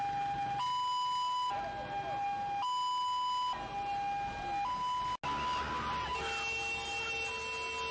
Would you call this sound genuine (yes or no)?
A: yes